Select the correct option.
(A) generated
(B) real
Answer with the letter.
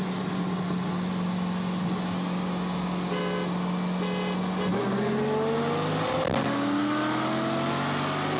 B